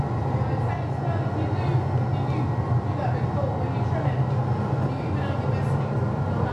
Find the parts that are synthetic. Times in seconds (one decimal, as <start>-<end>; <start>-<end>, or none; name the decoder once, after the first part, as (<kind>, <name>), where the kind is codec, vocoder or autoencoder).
none